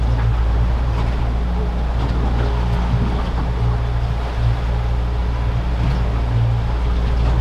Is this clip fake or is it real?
real